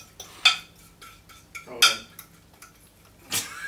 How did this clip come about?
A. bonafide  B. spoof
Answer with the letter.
A